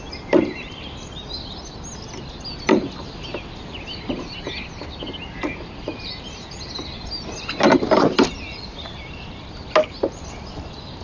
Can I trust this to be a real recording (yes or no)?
yes